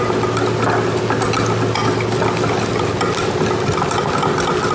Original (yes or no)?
yes